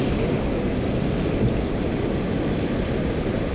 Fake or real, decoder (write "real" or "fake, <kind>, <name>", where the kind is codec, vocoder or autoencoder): real